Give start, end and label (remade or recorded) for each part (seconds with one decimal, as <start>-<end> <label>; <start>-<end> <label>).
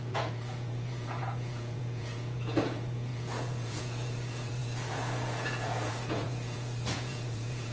0.0-7.7 remade